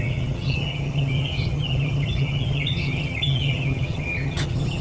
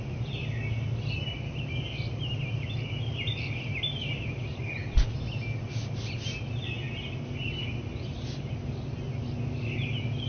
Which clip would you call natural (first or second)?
second